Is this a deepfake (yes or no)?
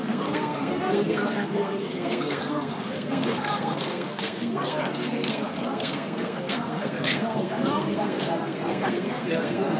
yes